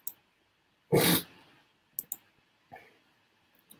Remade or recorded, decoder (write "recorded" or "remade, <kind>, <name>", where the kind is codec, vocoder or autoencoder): recorded